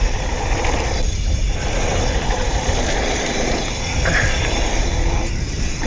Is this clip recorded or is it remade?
recorded